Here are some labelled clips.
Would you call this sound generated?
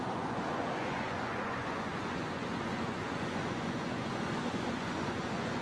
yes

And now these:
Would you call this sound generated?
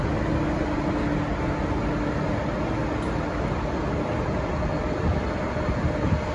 no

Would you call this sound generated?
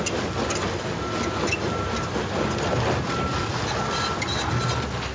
no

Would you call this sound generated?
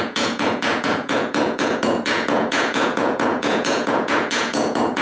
yes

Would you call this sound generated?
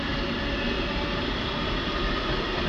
no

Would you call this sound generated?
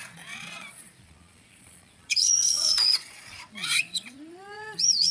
yes